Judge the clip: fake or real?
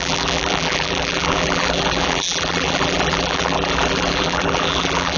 fake